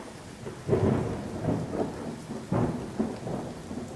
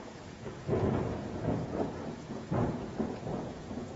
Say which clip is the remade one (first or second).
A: second